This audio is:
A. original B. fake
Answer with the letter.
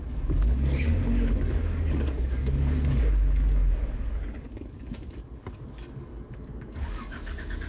B